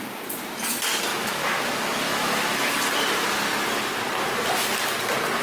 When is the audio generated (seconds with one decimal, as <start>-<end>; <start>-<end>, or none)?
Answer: 1.1-2.7